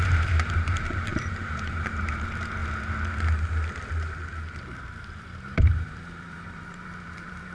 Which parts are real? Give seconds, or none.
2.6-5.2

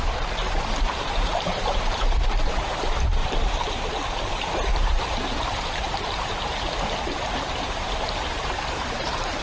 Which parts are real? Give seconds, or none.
none

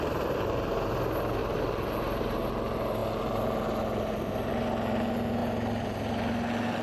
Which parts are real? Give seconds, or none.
0.0-1.4; 2.5-6.8